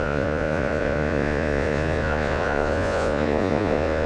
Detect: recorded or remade remade